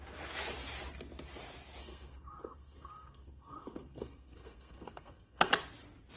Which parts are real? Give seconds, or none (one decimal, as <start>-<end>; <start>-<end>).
0.0-1.8; 5.5-6.2